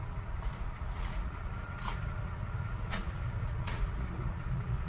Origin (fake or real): fake